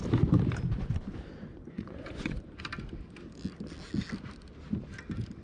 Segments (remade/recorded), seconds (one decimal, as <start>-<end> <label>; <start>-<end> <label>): 0.0-1.5 recorded; 1.5-2.6 remade; 2.6-5.4 recorded